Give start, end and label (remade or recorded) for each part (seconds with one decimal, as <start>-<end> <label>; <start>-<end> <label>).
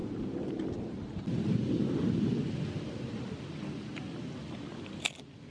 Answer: 0.0-5.5 recorded